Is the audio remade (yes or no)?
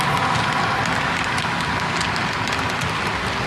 no